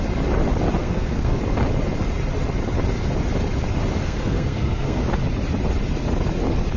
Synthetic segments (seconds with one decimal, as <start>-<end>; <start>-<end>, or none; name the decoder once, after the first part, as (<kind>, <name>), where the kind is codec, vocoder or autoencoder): 0.8-1.4 (codec, SNAC); 4.0-5.0